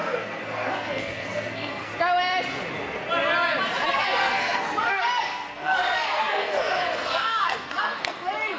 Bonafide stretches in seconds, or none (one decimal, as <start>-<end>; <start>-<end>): 1.9-3.9